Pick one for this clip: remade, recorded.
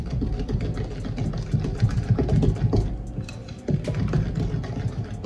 recorded